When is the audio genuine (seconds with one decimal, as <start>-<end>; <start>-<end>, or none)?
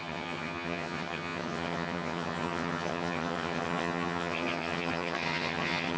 none